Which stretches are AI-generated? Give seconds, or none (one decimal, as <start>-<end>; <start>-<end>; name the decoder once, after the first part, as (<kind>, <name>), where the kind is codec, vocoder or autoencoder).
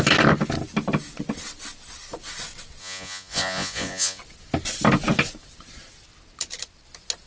2.8-4.2 (vocoder, Vocos)